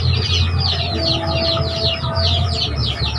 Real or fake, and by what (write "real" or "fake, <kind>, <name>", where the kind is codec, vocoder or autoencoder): real